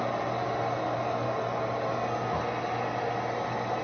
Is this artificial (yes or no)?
no